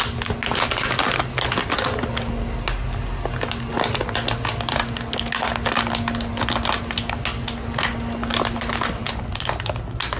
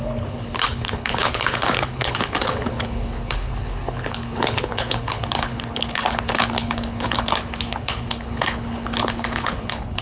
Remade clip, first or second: second